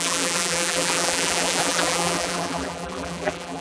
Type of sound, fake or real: fake